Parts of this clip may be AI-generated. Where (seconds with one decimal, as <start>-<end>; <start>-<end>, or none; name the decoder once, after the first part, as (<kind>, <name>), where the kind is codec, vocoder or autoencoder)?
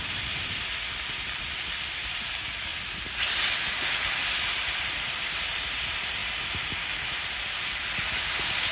0.0-2.7 (vocoder, BigVGAN v2); 3.9-6.2